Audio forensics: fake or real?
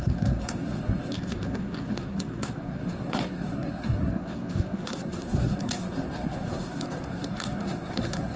fake